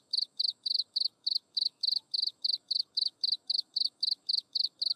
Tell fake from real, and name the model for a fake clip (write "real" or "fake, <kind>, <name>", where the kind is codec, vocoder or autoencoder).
fake, autoencoder, DAC-VAE